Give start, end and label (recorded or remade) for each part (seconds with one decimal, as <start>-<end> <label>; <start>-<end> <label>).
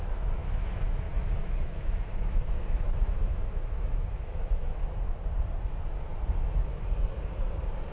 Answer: 0.0-0.4 recorded; 0.4-4.8 remade; 4.8-7.9 recorded